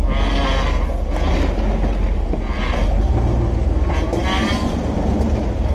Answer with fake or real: real